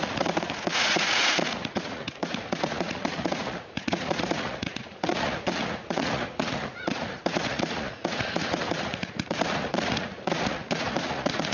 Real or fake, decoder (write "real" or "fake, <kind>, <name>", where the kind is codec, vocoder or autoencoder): fake, vocoder, Vocos